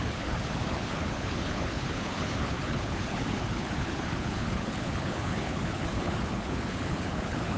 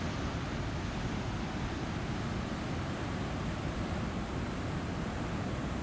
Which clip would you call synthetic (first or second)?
first